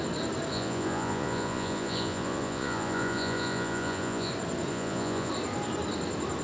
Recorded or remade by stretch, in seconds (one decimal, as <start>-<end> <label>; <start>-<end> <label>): 0.0-0.5 recorded; 0.5-4.3 remade; 4.3-4.7 recorded; 4.7-5.3 remade; 5.3-6.4 recorded